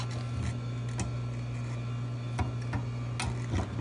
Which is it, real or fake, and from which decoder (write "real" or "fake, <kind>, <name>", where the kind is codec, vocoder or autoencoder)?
real